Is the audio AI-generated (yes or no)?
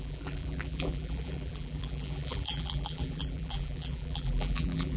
yes